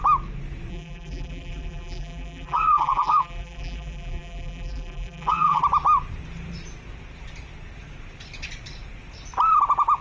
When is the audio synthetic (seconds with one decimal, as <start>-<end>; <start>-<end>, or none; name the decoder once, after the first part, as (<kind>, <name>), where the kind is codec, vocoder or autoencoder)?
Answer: 0.7-5.6 (vocoder, BigVGAN v2)